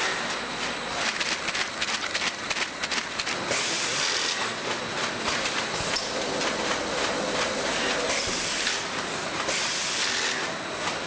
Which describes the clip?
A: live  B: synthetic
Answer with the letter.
A